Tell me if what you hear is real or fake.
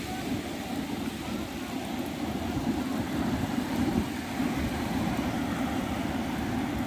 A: real